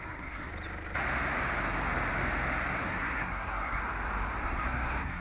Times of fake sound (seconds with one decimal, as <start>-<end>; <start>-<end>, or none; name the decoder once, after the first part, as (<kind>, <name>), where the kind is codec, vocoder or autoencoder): 0.0-0.5 (codec, SNAC); 2.7-3.8; 4.4-5.2

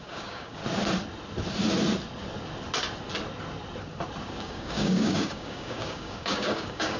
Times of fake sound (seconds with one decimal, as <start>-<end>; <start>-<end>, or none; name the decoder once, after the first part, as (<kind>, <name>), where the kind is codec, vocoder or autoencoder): 0.0-0.6 (codec, DAC); 4.4-7.0

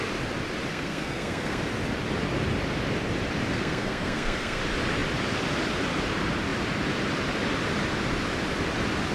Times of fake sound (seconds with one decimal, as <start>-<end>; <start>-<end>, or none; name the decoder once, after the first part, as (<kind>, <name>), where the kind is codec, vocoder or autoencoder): 0.7-1.6 (codec, SNAC); 3.5-4.6

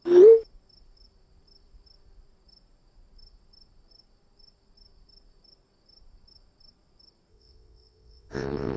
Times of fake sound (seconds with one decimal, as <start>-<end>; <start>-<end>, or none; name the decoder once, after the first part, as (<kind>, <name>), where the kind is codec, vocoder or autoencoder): 7.3-8.8 (vocoder, WaveNeXt)

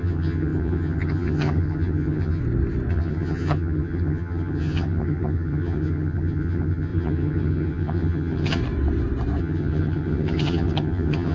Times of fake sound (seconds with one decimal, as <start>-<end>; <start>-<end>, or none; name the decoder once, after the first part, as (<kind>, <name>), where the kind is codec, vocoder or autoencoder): 0.0-2.4 (vocoder, HiFi-GAN); 2.9-8.6; 9.4-11.3

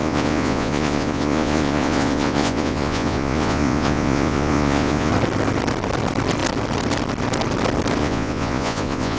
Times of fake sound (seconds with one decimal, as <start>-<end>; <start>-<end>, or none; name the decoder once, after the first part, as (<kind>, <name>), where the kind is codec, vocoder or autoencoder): 0.0-5.1 (vocoder, Vocos); 8.0-9.2